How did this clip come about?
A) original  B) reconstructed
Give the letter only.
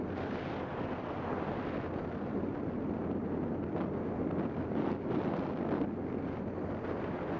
A